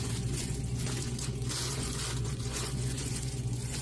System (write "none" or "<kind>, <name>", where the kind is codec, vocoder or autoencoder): vocoder, Vocos